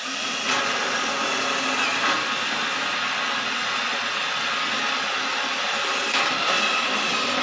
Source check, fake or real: real